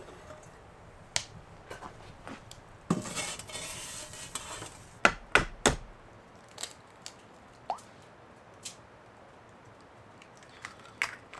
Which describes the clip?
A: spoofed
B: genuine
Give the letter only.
B